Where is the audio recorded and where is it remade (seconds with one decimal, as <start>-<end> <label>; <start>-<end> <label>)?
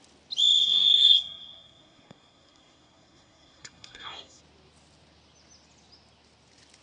0.0-0.6 recorded; 0.6-4.4 remade; 4.4-6.8 recorded